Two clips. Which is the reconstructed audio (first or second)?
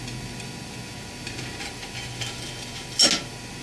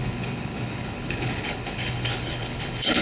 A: second